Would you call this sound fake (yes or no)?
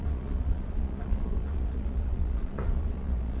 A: yes